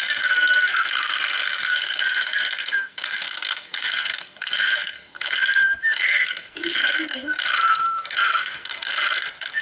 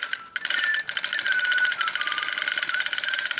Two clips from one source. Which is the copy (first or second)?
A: first